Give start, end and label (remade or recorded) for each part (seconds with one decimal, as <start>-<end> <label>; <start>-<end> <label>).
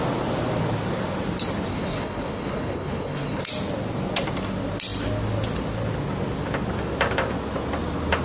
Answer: 0.0-1.7 recorded; 1.7-3.4 remade; 3.4-8.2 recorded